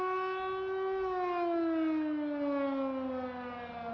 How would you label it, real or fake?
real